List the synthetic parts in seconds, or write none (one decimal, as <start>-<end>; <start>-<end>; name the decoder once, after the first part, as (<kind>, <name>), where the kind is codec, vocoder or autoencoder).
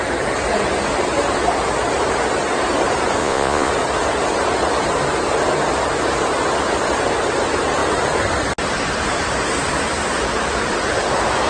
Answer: 3.2-3.7 (vocoder, Vocos)